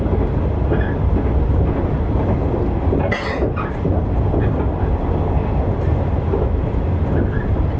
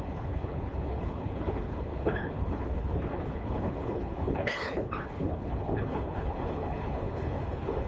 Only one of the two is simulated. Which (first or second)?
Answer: second